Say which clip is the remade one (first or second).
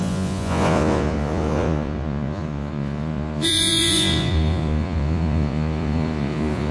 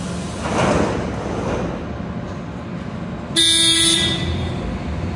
first